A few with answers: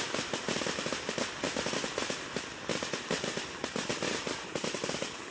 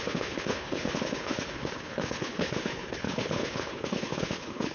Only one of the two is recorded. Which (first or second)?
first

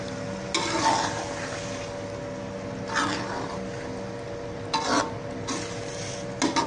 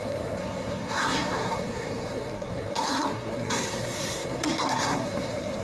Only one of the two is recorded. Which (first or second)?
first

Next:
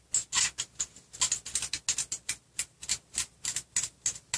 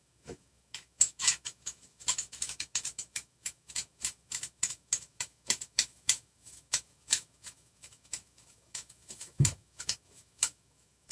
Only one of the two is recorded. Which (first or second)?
first